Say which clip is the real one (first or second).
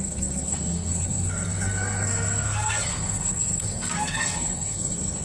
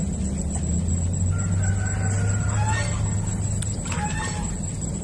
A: second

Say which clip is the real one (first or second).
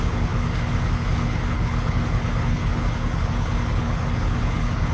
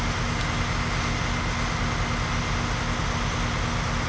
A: second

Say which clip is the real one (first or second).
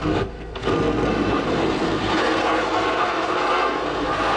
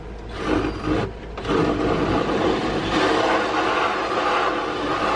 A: second